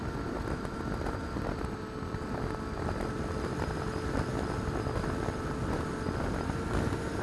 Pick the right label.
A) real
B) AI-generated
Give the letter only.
A